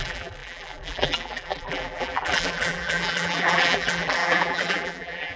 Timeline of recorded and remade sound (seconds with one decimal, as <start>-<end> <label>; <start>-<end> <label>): 0.0-5.4 remade